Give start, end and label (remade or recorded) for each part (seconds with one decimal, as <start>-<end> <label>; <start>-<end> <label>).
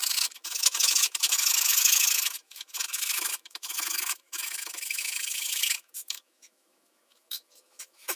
0.0-8.2 remade